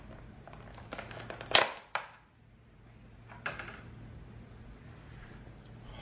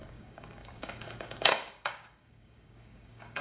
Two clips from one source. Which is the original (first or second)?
first